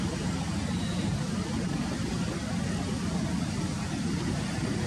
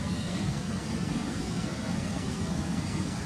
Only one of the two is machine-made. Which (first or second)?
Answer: second